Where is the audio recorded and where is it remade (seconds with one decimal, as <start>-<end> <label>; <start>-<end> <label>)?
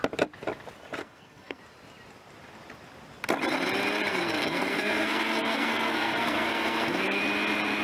0.0-1.0 recorded; 1.0-1.6 remade; 1.6-4.1 recorded; 4.1-7.2 remade; 7.2-7.8 recorded